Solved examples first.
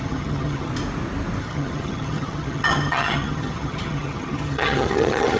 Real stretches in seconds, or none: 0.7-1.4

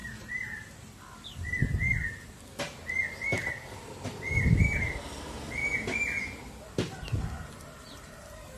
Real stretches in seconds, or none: 1.6-4.6; 5.6-7.5

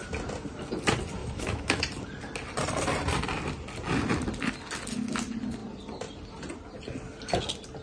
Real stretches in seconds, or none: 0.0-1.2; 1.8-7.8

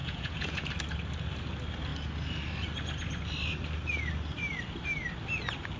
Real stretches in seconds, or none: 0.7-5.8

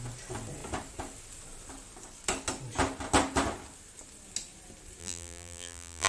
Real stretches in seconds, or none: 0.0-5.0